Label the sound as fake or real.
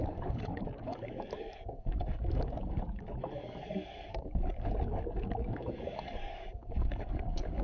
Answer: fake